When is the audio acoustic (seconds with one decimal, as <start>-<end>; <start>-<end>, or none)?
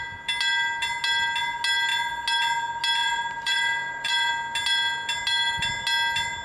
0.0-3.0; 4.3-6.4